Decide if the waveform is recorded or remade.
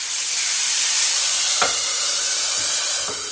recorded